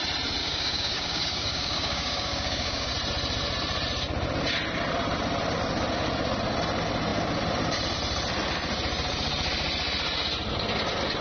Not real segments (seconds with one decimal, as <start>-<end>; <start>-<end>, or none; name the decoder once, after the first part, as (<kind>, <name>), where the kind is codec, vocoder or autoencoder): 0.4-2.9 (codec, DAC)